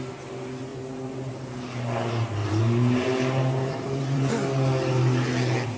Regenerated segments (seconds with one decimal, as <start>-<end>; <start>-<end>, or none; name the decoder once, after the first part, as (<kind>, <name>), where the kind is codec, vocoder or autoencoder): 0.7-1.3 (vocoder, BigVGAN v2); 2.4-4.3